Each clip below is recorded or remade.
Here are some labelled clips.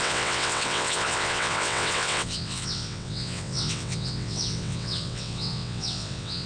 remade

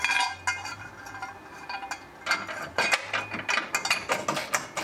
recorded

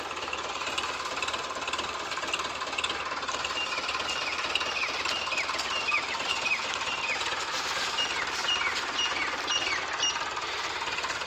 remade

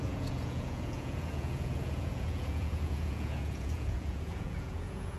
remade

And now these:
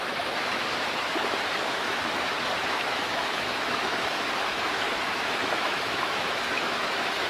remade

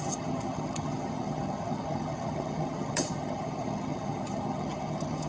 remade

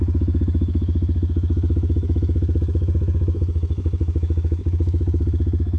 remade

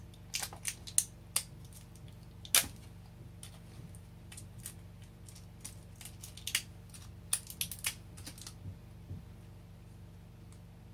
recorded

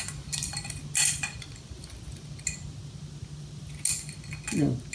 recorded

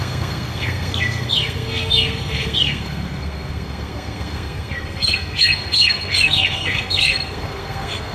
remade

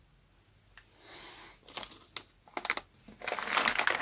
recorded